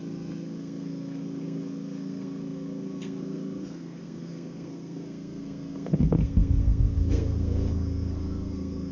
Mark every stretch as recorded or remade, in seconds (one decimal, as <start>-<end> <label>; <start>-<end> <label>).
0.0-8.9 remade